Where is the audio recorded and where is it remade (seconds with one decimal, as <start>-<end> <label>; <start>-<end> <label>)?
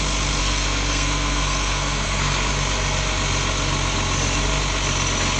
0.0-0.4 recorded; 0.4-2.5 remade; 2.5-5.4 recorded